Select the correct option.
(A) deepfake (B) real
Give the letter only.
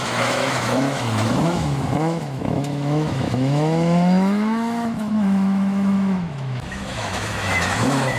A